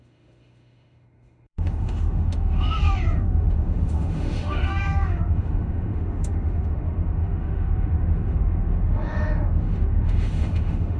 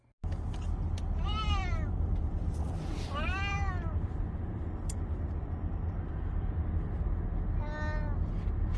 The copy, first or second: first